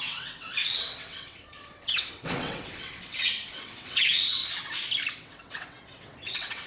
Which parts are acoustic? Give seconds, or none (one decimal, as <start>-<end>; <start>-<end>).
4.4-5.1